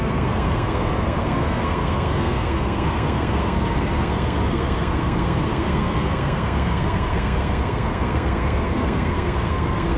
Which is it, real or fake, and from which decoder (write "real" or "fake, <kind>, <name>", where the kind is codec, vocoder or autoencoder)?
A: fake, codec, SNAC